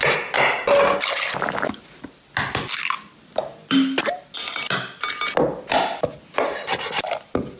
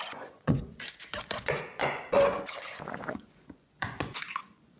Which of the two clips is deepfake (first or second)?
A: second